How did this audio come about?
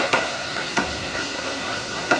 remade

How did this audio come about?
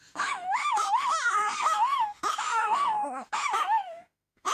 remade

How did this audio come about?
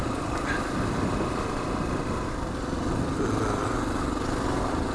recorded